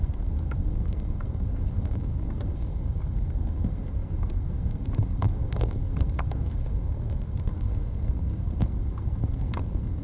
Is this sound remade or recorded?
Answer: remade